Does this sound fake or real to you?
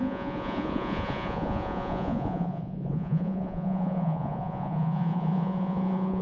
fake